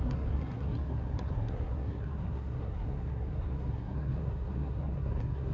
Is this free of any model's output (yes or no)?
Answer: no